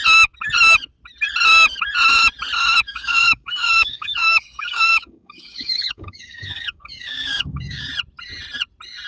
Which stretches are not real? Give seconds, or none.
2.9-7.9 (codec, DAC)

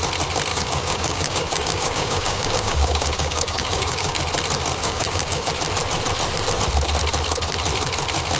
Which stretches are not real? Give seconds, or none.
0.5-4.2 (codec, DAC); 4.8-5.5